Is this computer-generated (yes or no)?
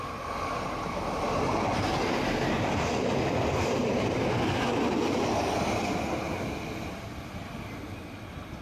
no